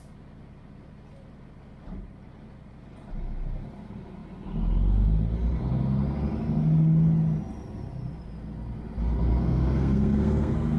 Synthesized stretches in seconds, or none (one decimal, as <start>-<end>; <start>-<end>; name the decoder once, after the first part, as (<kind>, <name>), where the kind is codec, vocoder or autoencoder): 9.3-10.8 (codec, SNAC)